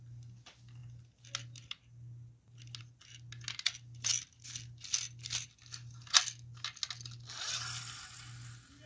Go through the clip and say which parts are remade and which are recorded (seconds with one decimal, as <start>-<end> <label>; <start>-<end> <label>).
0.0-8.9 recorded